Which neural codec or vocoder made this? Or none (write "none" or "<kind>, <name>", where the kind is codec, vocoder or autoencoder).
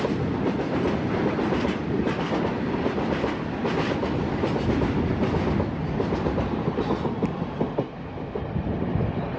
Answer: none